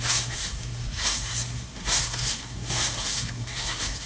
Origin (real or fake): fake